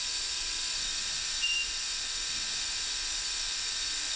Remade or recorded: remade